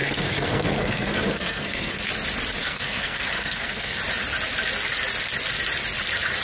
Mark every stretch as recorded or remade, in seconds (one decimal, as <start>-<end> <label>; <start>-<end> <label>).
0.0-1.9 remade; 1.9-2.6 recorded; 2.6-4.0 remade; 4.0-6.4 recorded